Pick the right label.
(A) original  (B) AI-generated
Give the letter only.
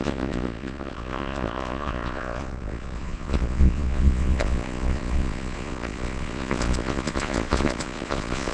B